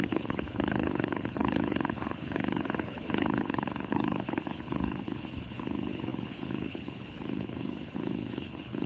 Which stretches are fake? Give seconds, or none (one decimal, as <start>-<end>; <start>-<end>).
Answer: 0.0-8.9